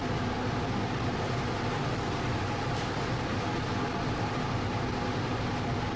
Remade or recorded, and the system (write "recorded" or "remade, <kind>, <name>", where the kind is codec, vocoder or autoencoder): recorded